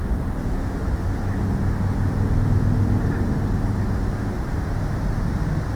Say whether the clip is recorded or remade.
recorded